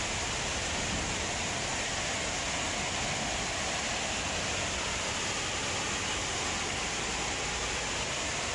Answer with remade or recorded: recorded